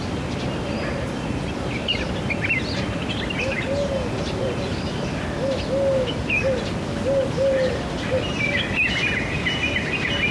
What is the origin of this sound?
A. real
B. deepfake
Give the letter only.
A